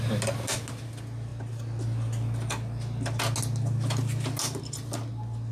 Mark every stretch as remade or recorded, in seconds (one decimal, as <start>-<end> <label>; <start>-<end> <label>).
0.0-5.5 recorded